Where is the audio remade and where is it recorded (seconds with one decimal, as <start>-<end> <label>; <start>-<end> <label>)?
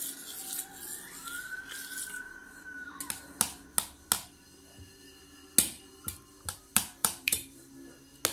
0.0-2.4 recorded; 2.4-2.9 remade; 2.9-7.0 recorded; 7.0-7.6 remade; 7.6-8.3 recorded